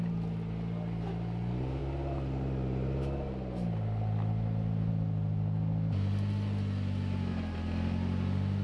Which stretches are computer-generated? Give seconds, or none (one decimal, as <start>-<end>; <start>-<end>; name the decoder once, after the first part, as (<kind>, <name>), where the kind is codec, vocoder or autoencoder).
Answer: none